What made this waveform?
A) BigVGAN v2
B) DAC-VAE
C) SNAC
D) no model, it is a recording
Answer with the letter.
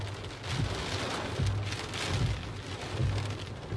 D